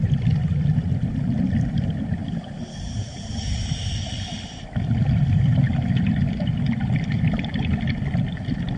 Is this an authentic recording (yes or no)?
yes